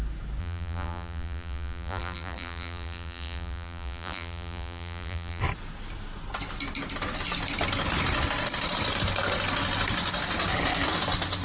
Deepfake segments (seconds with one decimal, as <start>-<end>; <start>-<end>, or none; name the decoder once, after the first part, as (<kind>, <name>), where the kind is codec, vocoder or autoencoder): 0.4-5.4 (vocoder, BigVGAN v2)